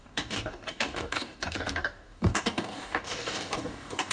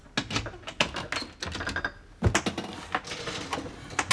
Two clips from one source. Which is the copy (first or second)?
first